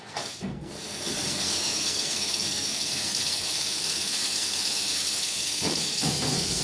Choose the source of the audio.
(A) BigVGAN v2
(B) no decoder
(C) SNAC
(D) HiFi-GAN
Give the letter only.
C